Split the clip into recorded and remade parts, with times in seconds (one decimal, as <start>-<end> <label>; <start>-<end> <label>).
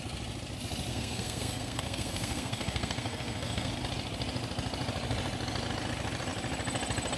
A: 0.0-0.9 recorded; 0.9-3.7 remade; 3.7-7.2 recorded